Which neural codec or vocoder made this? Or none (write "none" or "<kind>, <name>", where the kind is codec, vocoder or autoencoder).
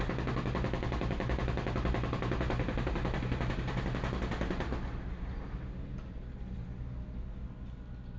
none